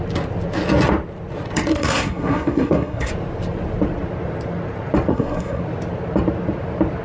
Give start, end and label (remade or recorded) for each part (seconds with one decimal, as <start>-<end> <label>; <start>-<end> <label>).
0.0-1.7 recorded; 1.7-3.1 remade; 3.1-5.1 recorded; 5.1-5.6 remade; 5.6-7.0 recorded